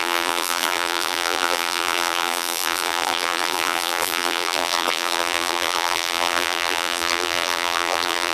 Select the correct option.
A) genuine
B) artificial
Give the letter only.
B